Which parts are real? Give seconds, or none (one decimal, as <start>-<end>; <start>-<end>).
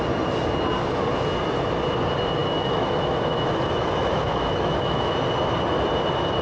0.0-2.4; 5.1-6.4